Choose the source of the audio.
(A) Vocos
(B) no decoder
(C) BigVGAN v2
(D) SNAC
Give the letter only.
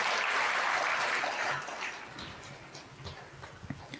B